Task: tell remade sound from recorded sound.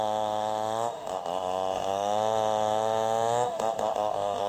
remade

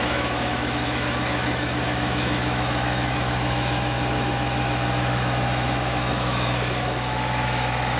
remade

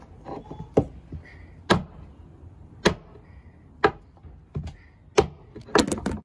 recorded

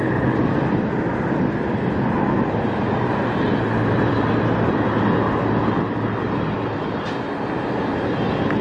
recorded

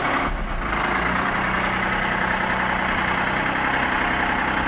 recorded